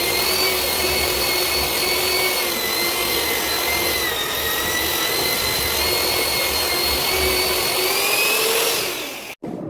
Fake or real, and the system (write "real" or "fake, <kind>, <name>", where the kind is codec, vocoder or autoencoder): real